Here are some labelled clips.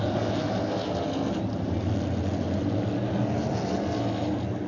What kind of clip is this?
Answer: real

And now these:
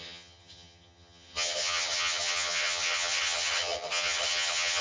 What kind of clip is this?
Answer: fake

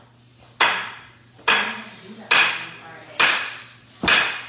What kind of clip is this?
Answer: real